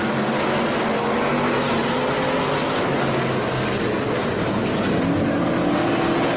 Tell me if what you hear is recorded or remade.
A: recorded